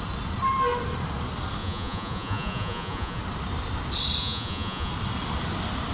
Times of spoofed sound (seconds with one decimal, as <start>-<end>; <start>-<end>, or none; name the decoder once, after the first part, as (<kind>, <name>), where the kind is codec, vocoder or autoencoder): 1.6-3.2 (vocoder, Vocos); 4.2-4.9